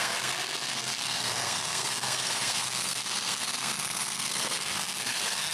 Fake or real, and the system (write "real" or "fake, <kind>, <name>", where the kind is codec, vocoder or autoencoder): fake, codec, SNAC